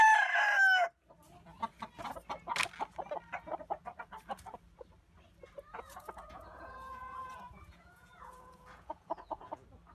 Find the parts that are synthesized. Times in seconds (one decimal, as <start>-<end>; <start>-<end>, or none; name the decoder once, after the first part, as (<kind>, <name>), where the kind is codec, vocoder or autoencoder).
5.7-9.5 (vocoder, Vocos)